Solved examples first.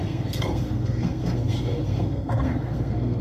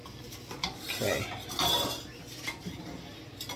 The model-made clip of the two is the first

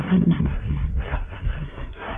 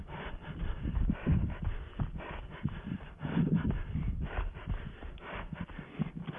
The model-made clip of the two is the first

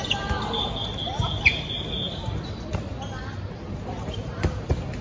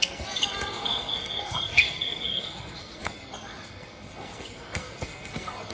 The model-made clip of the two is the second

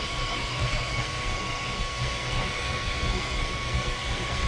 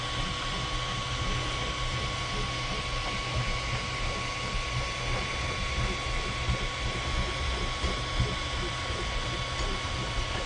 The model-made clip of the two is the first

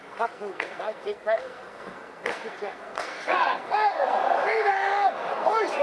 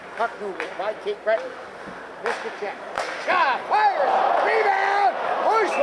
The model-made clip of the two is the first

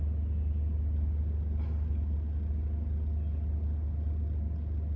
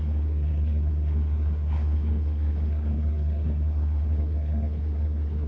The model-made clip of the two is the second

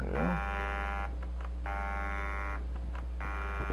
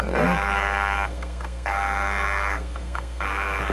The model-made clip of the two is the second